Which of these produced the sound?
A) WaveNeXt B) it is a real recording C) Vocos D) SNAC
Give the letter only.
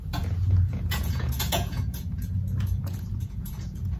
C